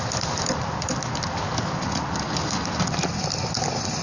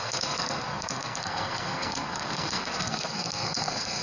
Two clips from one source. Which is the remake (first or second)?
second